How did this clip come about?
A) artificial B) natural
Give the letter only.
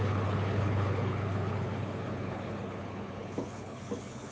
A